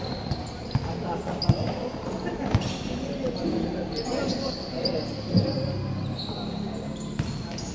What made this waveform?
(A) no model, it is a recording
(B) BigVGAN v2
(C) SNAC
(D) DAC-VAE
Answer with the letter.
A